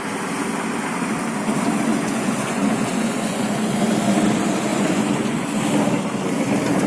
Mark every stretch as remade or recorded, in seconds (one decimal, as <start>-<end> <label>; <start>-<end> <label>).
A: 0.0-1.9 recorded; 1.9-3.8 remade; 3.8-4.7 recorded; 4.7-5.6 remade; 5.6-6.9 recorded